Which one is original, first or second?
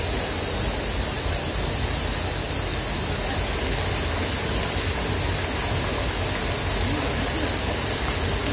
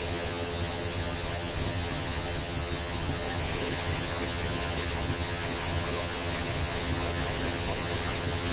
first